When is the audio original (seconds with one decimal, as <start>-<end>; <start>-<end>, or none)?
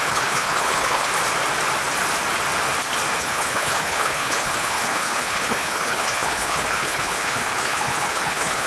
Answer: 1.1-3.2